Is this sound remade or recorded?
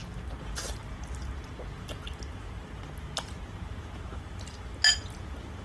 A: recorded